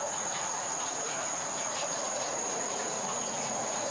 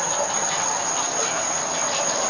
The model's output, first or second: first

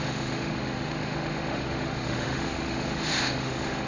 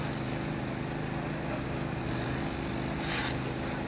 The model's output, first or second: first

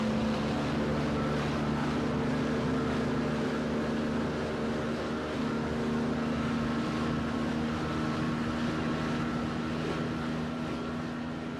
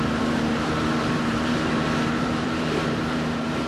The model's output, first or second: second